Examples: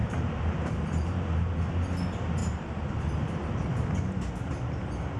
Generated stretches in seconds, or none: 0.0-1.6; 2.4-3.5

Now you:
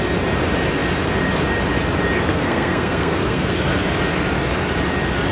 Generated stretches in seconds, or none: 2.3-3.7

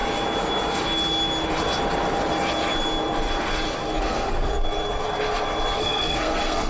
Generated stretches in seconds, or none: 4.0-4.5; 5.8-6.7

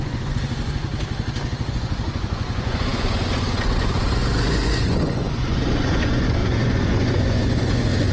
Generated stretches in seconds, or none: 0.0-0.9; 1.7-8.1